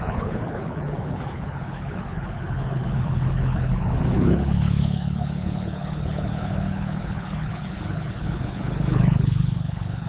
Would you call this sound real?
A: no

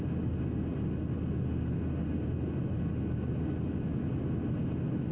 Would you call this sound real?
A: yes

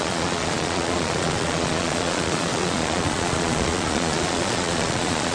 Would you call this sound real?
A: no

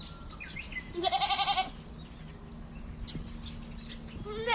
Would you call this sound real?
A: yes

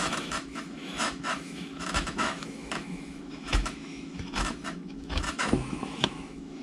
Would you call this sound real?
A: no